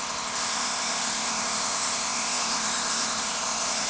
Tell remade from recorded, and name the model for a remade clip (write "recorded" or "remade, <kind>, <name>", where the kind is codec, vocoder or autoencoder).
remade, codec, ZipCodec